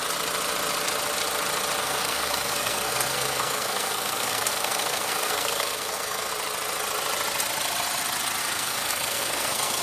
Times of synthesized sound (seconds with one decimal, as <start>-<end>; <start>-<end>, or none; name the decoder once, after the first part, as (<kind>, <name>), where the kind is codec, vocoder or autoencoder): 1.8-6.3 (codec, SNAC); 8.4-9.8